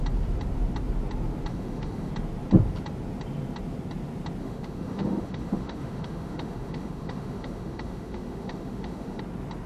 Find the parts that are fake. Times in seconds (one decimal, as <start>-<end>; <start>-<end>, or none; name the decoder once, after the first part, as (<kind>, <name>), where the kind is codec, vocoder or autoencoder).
1.5-2.1 (autoencoder, DAC-VAE); 4.4-9.2